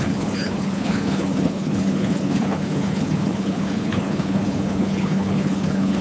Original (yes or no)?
no